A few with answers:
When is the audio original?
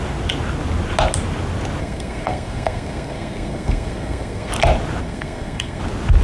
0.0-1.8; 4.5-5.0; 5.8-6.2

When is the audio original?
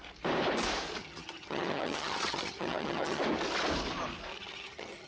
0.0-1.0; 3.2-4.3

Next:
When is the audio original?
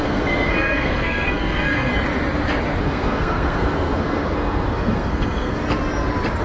1.9-2.8; 5.6-6.4